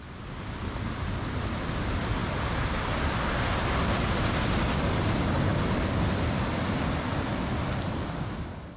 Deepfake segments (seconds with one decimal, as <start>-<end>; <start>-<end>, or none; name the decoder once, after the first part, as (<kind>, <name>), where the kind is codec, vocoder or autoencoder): none